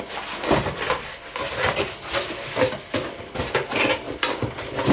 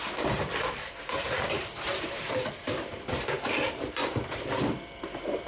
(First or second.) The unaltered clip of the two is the first